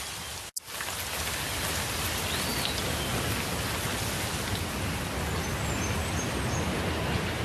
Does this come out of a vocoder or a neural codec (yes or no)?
no